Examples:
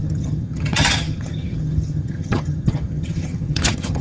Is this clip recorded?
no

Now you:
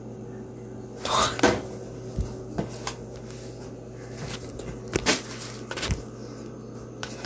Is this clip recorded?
yes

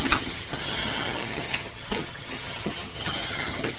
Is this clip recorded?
no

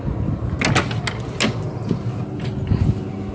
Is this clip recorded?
yes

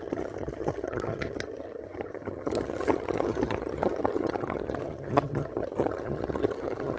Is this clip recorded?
no